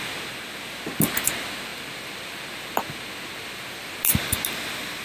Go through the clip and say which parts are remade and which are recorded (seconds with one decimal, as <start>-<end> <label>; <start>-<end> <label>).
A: 0.0-5.0 recorded